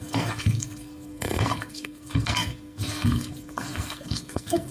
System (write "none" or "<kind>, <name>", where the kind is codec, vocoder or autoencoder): codec, SNAC